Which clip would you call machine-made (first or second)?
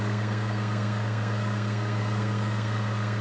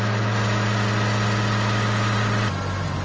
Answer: first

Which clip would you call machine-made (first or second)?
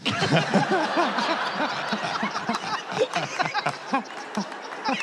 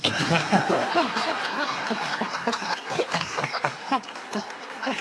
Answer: second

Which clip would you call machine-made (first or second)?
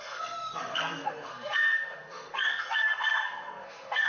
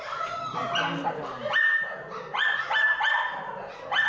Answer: first